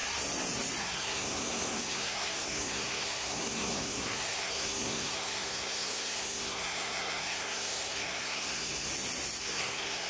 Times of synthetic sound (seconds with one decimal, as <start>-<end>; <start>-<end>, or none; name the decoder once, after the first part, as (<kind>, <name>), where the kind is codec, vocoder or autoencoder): 0.8-8.9 (codec, SNAC); 9.4-10.1